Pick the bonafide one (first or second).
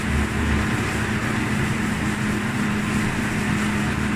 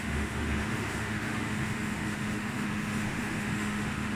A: first